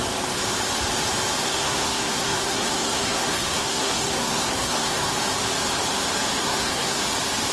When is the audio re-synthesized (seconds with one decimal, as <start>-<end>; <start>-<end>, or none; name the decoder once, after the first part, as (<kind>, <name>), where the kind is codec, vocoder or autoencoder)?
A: 1.4-5.1 (codec, SNAC); 6.4-7.0